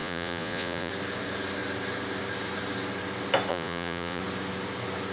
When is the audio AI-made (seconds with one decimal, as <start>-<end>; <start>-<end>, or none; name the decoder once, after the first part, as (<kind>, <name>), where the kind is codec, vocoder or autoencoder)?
0.0-0.9 (vocoder, Vocos); 3.5-4.2